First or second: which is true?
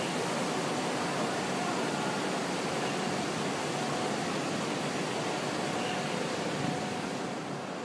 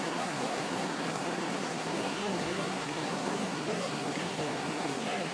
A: first